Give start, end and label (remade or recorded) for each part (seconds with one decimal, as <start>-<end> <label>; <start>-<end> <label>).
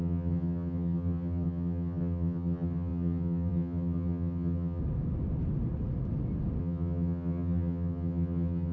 0.0-4.8 remade; 4.8-6.6 recorded; 6.6-8.7 remade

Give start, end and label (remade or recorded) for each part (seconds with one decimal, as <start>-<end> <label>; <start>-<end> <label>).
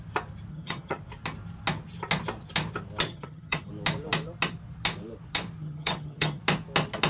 0.0-0.5 recorded; 0.5-1.0 remade; 1.0-3.1 recorded; 3.1-3.7 remade; 3.7-5.6 recorded; 5.6-6.4 remade; 6.4-7.1 recorded